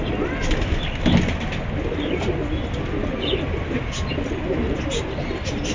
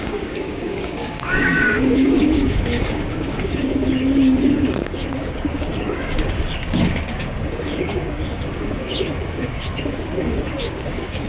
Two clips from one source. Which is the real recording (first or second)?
first